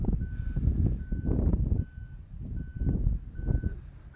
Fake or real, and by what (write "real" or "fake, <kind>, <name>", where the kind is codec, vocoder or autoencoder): real